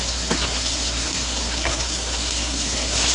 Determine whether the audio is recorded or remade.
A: remade